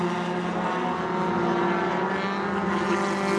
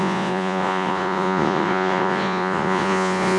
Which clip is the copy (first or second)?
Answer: second